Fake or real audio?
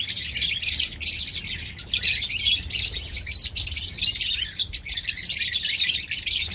real